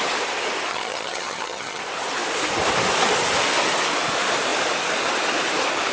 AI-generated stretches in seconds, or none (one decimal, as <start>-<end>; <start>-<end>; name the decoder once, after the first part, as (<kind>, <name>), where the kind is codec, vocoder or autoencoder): 0.7-1.8 (vocoder, HiFi-GAN)

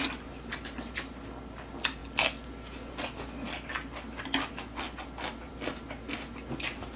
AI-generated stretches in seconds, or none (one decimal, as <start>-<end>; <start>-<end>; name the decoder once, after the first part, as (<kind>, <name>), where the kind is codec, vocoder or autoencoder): none